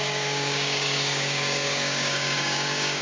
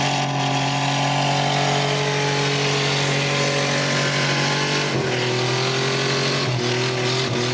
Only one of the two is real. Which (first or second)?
second